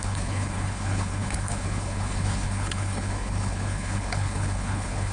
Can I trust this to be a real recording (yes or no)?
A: no